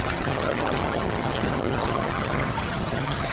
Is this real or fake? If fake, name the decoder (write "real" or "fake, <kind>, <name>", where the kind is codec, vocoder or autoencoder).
fake, vocoder, HiFi-GAN